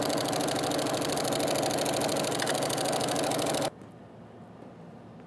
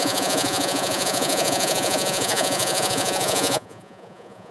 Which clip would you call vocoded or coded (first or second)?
second